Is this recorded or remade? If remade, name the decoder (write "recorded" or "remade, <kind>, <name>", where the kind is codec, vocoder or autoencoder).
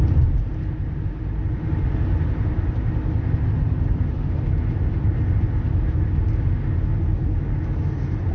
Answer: recorded